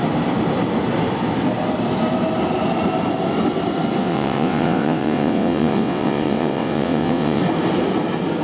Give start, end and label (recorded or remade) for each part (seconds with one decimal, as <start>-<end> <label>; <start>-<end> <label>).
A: 0.0-4.0 recorded; 4.0-7.4 remade; 7.4-8.4 recorded